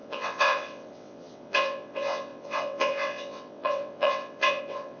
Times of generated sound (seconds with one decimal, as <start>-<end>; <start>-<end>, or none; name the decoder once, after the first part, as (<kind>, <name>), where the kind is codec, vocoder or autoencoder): 0.0-5.0 (vocoder, WaveNeXt)